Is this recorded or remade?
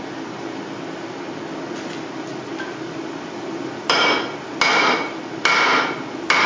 recorded